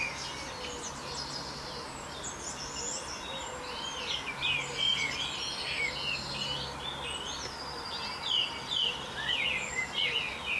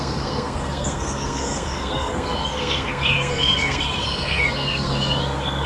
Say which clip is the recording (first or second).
first